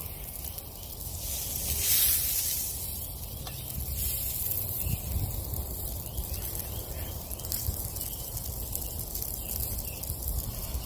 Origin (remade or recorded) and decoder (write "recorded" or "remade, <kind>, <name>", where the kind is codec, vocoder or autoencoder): recorded